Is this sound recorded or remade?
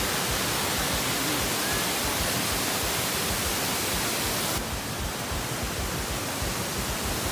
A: recorded